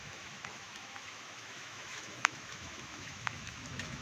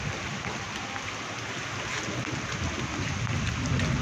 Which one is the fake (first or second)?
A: first